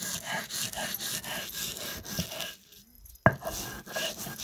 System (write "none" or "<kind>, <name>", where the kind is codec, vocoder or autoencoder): none